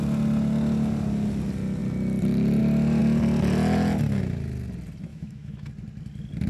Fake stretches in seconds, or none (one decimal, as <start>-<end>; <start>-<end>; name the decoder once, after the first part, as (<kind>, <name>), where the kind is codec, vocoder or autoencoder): 5.1-5.7 (autoencoder, DAC-VAE)